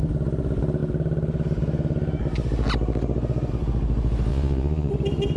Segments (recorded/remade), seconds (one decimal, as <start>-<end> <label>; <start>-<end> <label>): 0.0-4.3 recorded; 4.3-4.9 remade; 4.9-5.4 recorded